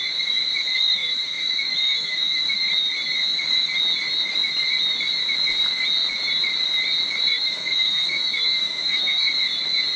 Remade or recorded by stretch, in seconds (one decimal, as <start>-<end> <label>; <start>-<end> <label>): 0.0-0.7 recorded; 0.7-2.7 remade; 2.7-7.3 recorded; 7.3-9.3 remade; 9.3-10.0 recorded